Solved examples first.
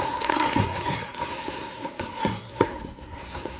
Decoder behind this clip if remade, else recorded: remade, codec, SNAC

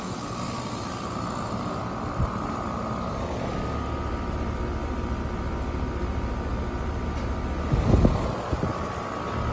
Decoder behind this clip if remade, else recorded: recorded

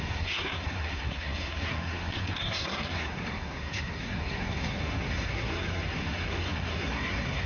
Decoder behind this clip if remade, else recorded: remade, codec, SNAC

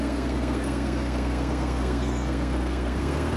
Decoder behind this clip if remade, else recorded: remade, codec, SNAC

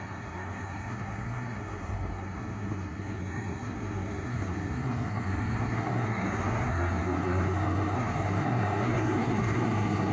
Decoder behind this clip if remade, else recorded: remade, codec, SNAC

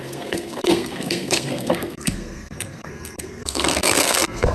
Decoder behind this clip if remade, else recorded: remade, codec, SNAC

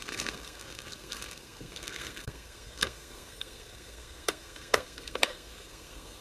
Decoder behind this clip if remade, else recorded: remade, codec, SNAC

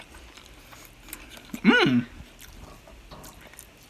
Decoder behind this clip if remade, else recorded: recorded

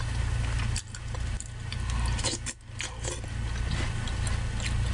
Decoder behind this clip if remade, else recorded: recorded